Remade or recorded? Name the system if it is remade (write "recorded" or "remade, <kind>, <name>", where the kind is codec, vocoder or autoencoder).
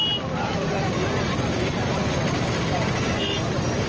recorded